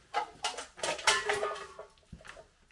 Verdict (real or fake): real